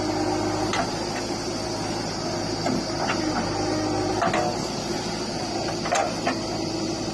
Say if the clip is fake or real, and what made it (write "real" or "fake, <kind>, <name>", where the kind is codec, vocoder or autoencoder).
real